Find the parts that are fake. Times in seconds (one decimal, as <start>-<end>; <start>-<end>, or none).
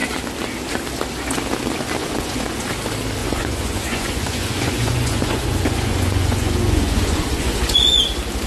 2.0-2.6; 3.2-8.0